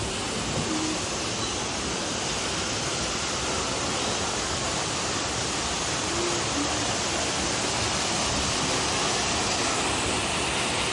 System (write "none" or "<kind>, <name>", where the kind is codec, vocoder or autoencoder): none